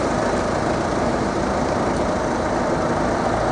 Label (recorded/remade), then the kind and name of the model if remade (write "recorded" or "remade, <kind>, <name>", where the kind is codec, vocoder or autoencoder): recorded